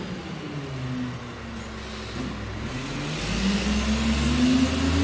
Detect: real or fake real